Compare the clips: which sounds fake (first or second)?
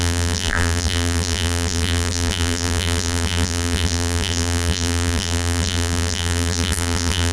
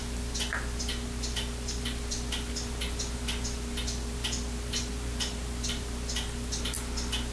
first